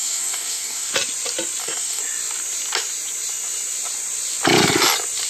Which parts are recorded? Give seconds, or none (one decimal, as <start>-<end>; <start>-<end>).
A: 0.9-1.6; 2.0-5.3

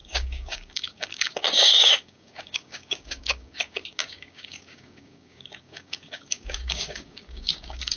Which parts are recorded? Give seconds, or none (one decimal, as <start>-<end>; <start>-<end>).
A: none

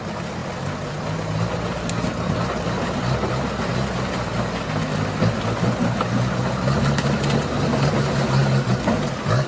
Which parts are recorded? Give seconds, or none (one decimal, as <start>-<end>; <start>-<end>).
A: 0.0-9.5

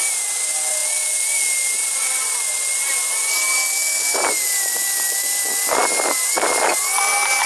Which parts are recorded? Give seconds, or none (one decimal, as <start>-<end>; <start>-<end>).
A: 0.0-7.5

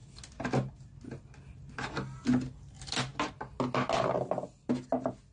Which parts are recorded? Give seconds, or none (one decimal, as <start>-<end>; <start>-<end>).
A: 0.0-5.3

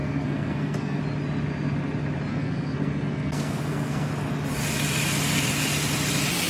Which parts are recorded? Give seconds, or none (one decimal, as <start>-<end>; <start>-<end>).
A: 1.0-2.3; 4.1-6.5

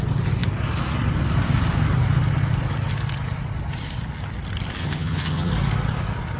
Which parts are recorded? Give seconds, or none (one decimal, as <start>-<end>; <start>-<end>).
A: 0.0-4.8; 5.5-6.4

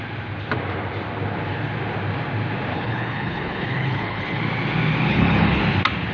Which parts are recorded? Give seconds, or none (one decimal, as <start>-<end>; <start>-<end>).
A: 0.0-2.7; 4.4-5.1; 5.6-6.1